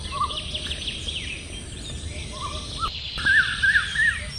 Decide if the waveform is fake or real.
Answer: real